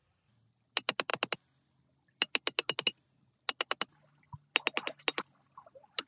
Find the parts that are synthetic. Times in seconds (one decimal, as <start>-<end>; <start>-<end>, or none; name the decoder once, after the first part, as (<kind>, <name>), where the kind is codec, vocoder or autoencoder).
none

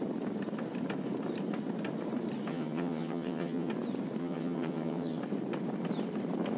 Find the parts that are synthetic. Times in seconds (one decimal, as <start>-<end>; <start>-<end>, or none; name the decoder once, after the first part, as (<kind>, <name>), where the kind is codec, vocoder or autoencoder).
2.5-3.7 (vocoder, HiFi-GAN); 4.2-5.2

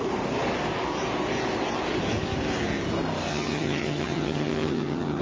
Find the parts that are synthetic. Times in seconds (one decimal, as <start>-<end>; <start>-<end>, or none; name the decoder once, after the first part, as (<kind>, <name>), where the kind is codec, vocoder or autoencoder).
3.3-5.2 (vocoder, HiFi-GAN)